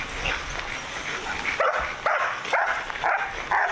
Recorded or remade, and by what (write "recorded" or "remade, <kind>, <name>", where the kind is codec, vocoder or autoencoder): recorded